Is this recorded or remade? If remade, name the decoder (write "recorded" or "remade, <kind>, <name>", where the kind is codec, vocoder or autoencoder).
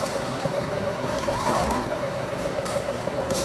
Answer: remade, codec, SNAC